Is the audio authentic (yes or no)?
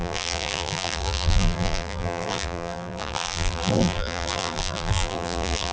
no